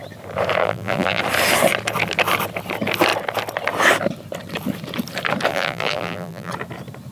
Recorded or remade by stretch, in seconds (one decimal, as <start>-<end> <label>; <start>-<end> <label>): 0.0-0.6 recorded; 0.6-1.2 remade; 1.2-5.5 recorded; 5.5-6.5 remade; 6.5-7.1 recorded